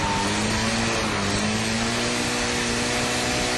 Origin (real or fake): real